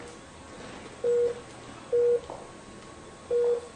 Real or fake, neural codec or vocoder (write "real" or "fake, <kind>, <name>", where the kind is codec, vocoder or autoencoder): real